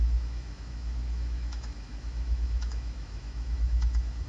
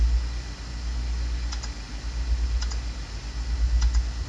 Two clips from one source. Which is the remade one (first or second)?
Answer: first